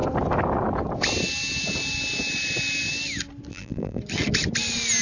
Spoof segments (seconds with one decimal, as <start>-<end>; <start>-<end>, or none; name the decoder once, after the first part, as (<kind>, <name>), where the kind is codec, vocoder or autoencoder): 3.5-4.0 (vocoder, BigVGAN v2)